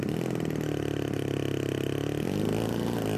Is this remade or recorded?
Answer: recorded